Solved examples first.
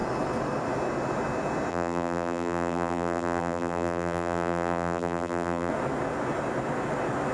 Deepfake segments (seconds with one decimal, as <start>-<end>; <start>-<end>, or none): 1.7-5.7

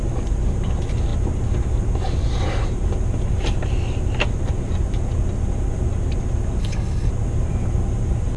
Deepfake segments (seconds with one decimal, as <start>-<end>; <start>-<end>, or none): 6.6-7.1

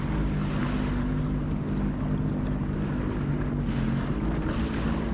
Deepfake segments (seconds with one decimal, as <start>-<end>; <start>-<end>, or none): none